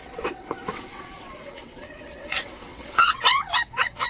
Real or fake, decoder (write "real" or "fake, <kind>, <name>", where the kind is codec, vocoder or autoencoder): fake, vocoder, WaveNeXt